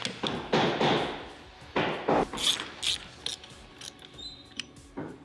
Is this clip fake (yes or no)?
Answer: no